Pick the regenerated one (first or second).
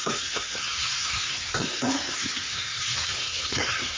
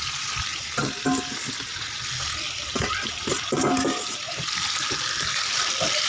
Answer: first